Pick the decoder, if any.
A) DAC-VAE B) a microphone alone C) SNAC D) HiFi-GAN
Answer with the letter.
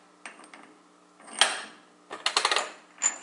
B